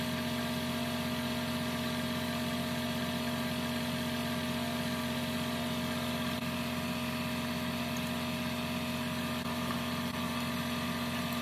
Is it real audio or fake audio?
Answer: real